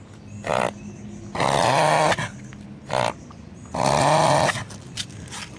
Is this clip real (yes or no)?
yes